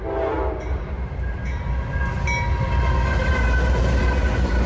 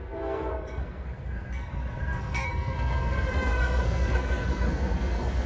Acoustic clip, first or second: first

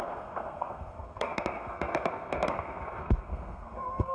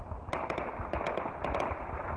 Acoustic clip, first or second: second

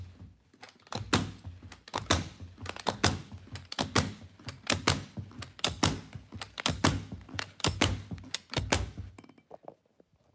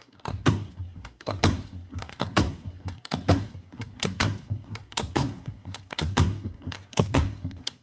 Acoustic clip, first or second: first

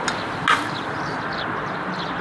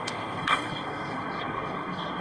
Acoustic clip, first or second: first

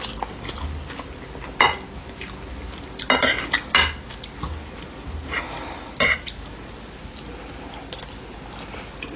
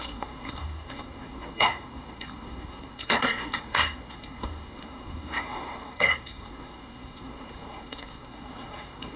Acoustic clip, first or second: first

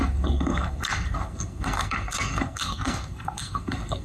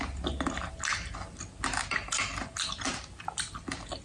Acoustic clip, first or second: second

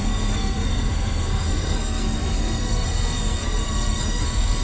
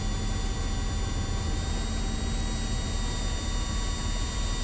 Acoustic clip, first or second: second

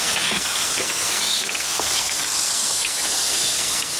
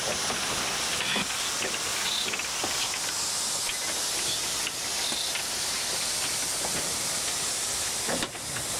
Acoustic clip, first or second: second